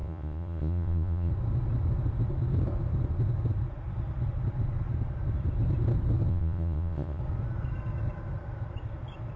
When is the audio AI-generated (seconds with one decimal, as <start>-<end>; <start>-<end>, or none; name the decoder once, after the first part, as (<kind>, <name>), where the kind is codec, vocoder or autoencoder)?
0.0-1.3 (vocoder, Vocos); 6.3-7.2